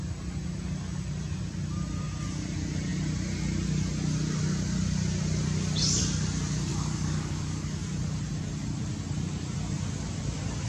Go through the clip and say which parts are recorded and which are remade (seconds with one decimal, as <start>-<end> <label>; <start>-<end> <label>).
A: 0.0-6.7 recorded; 6.7-7.8 remade; 7.8-10.7 recorded